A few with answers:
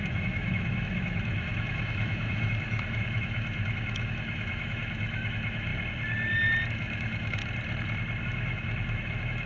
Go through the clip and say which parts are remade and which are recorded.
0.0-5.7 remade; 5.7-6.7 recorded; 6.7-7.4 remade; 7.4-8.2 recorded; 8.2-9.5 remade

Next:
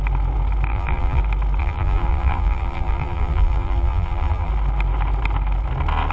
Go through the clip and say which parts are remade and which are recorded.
0.0-0.7 recorded; 0.7-1.2 remade; 1.2-1.6 recorded; 1.6-4.5 remade; 4.5-6.1 recorded